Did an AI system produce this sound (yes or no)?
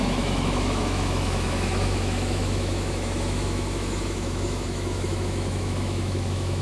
yes